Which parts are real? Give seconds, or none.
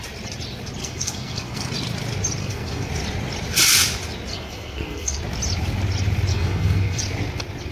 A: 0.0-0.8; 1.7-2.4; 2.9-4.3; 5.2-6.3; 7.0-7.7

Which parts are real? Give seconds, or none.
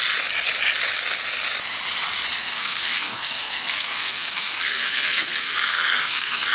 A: 0.0-2.4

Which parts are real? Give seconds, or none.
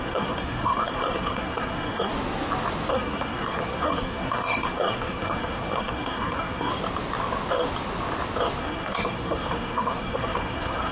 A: 2.1-2.9; 6.7-8.6